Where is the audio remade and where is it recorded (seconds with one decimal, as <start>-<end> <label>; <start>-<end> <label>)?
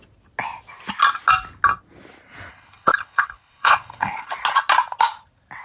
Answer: 0.0-2.5 recorded; 2.5-4.3 remade; 4.3-5.6 recorded